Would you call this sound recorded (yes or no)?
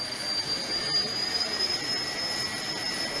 yes